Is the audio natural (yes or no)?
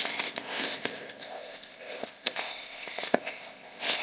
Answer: no